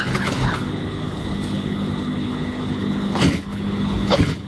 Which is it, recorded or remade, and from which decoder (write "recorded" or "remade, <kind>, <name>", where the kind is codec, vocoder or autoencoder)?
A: remade, codec, HILCodec